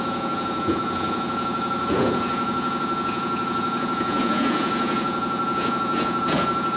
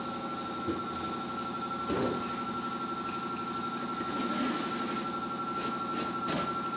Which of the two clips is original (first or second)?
second